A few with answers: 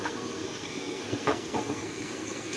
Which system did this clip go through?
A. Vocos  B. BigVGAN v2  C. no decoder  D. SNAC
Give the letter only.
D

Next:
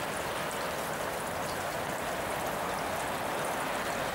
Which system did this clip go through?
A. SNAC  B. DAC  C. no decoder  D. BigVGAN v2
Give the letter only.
C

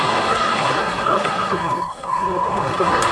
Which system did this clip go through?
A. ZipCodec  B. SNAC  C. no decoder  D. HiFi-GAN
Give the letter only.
B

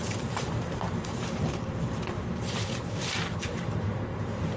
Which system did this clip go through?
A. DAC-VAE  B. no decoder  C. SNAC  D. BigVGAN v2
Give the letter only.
D